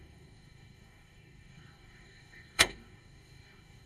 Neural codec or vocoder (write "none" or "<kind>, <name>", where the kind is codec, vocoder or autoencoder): codec, DAC